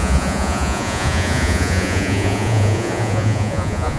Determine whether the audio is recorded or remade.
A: remade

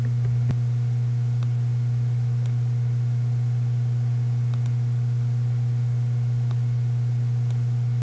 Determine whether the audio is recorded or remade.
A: recorded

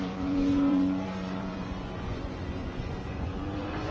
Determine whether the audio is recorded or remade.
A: remade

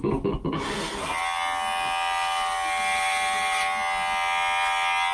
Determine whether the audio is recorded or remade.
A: recorded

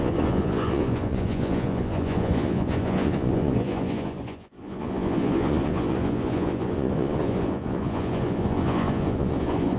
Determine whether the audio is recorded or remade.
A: remade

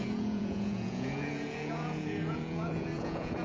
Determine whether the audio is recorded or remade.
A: remade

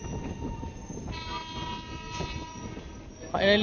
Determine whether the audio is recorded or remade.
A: recorded